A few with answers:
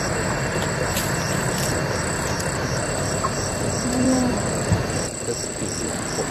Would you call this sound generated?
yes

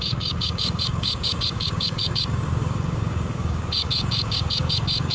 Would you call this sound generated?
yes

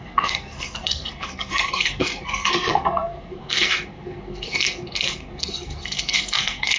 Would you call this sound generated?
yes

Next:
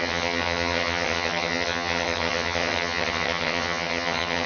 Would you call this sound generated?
yes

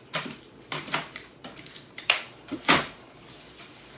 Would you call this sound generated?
yes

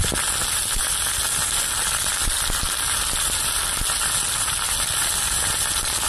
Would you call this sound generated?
no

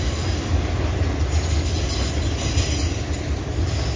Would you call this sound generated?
no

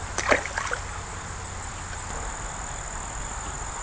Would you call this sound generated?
no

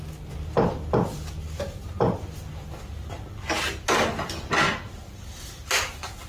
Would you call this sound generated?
no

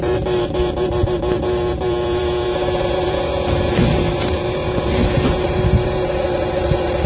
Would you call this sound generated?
yes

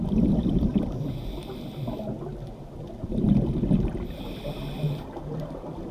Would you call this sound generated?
no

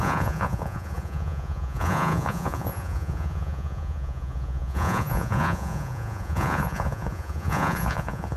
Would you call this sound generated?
yes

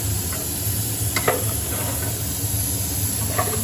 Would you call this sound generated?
no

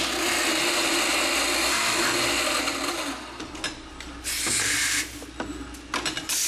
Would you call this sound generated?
no